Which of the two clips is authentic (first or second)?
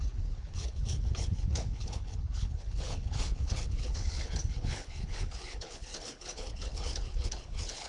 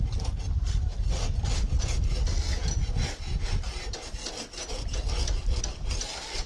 second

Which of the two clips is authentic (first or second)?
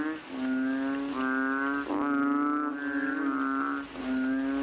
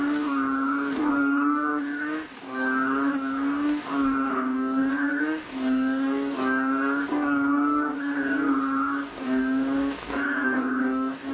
first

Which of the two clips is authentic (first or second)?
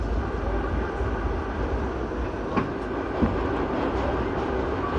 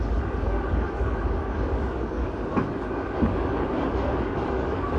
first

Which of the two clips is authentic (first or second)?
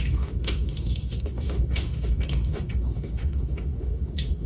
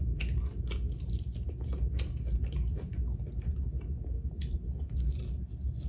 second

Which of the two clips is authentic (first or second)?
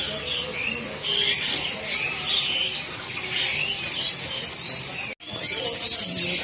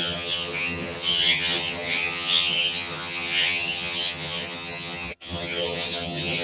first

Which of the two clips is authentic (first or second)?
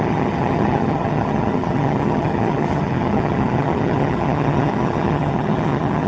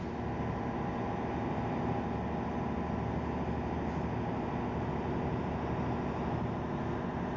second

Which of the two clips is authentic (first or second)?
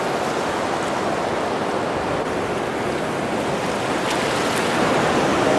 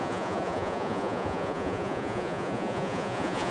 first